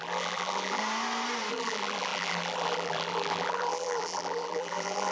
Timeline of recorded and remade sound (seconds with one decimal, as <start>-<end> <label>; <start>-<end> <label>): 0.0-0.8 remade; 0.8-1.5 recorded; 1.5-5.1 remade